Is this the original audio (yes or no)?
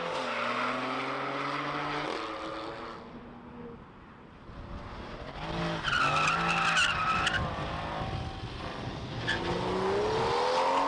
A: yes